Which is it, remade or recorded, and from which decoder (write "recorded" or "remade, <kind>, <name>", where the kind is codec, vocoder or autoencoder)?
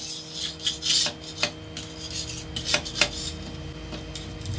recorded